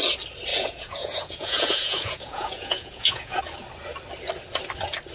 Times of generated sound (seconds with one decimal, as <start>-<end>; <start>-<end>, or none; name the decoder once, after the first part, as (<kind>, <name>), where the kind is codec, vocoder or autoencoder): 0.5-3.4 (vocoder, Vocos)